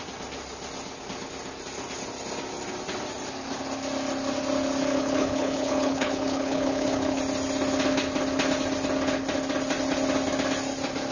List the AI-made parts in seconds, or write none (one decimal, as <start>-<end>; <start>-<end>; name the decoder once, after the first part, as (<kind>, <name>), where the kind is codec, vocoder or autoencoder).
4.9-7.2 (codec, HILCodec)